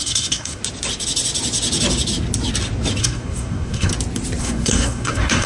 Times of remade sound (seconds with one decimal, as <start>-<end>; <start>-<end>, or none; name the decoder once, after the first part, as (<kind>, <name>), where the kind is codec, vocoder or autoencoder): 0.0-0.6 (codec, SNAC); 3.0-3.9; 4.4-5.5